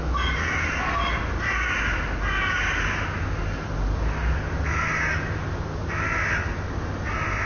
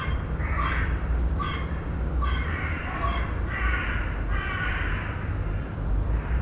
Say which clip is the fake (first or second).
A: second